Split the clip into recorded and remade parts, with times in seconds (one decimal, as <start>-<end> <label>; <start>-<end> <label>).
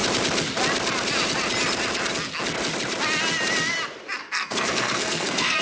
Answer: 0.0-4.2 recorded; 4.2-5.6 remade